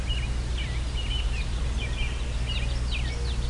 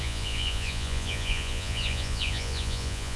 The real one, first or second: first